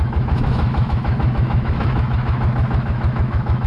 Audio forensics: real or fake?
fake